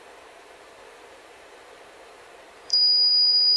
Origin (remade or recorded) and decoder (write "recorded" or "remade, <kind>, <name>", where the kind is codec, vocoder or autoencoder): remade, vocoder, BigVGAN v2